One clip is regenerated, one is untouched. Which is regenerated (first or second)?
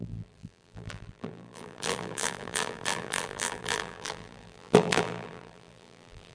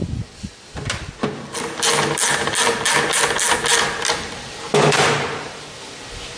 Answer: first